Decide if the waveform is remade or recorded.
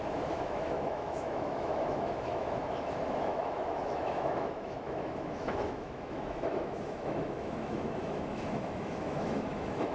remade